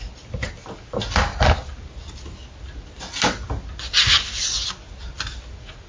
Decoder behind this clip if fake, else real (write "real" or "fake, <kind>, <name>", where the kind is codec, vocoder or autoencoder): real